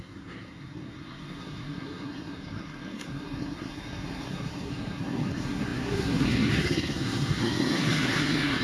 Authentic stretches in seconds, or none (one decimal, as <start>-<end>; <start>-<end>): none